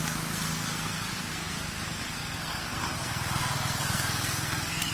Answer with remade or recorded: remade